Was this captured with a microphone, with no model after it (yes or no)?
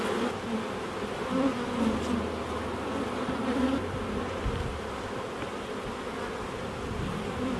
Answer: yes